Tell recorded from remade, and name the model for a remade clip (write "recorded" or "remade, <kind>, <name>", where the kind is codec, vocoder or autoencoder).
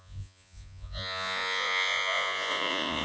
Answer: remade, vocoder, Vocos